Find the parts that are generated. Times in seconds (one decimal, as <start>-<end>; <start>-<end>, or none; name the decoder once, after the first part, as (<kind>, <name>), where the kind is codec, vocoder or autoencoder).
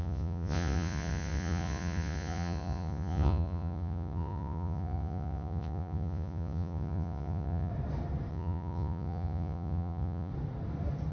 0.0-7.7 (vocoder, Vocos); 8.3-10.3